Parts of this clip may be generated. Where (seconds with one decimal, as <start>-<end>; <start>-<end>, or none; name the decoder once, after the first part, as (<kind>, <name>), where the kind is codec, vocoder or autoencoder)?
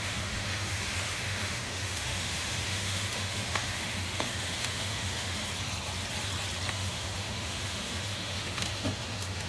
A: 0.0-5.4 (autoencoder, DAC-VAE); 6.7-9.5